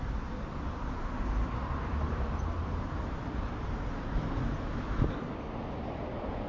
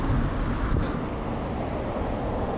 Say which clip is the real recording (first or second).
second